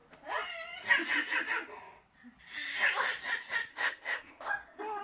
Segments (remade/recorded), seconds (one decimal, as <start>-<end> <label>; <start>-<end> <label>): 0.0-3.7 recorded; 3.7-4.5 remade; 4.5-5.0 recorded